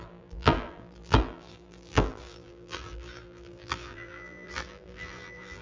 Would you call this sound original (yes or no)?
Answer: no